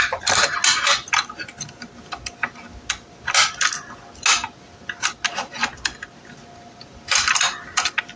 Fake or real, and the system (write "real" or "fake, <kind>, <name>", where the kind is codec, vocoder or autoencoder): real